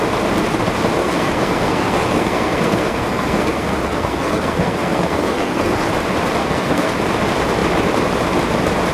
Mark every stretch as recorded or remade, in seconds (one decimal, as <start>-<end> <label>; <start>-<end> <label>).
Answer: 0.0-1.0 recorded; 1.0-5.9 remade; 5.9-6.4 recorded; 6.4-6.9 remade; 6.9-8.9 recorded